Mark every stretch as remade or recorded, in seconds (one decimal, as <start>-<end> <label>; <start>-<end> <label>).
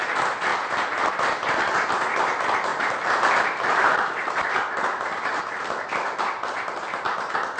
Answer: 0.0-2.7 recorded; 2.7-5.4 remade; 5.4-7.6 recorded